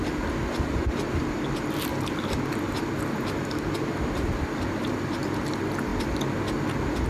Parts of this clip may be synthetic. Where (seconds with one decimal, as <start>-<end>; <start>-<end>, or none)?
none